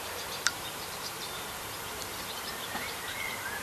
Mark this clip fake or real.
fake